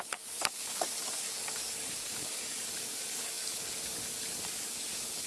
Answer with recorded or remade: remade